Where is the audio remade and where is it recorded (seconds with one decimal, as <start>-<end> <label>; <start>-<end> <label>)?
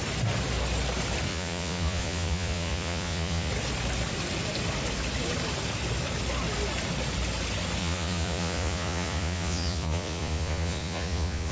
0.0-1.3 recorded; 1.3-3.5 remade; 3.5-7.8 recorded; 7.8-11.5 remade